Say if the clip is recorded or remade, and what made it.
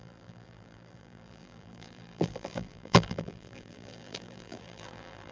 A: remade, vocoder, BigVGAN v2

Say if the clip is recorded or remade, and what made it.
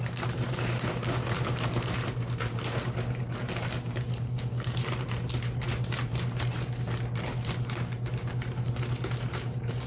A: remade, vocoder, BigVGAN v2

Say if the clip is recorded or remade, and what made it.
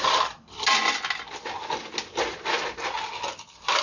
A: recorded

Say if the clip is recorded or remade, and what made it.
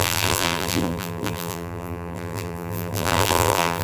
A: remade, vocoder, BigVGAN v2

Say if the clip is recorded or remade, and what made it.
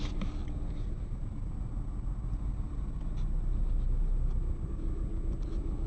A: recorded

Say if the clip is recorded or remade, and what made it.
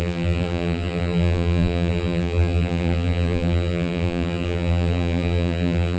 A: remade, vocoder, BigVGAN v2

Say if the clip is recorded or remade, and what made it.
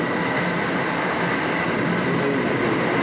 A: recorded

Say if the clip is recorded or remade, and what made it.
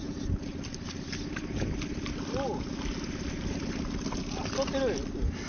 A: recorded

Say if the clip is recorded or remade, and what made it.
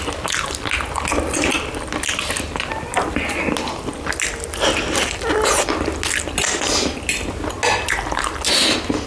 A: recorded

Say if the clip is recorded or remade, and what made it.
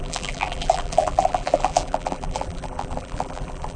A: remade, vocoder, BigVGAN v2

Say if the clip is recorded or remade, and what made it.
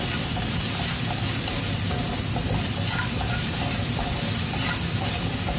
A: remade, vocoder, BigVGAN v2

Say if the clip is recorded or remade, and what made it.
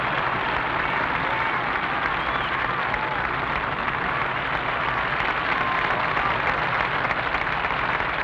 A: recorded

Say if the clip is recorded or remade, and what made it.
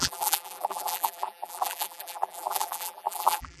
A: remade, vocoder, BigVGAN v2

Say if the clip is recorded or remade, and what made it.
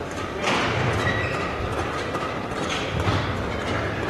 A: remade, vocoder, BigVGAN v2